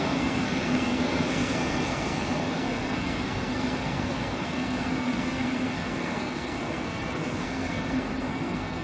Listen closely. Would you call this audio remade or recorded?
remade